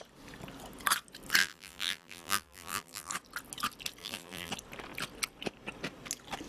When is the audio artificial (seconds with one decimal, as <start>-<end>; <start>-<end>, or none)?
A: 1.4-3.1; 4.0-4.5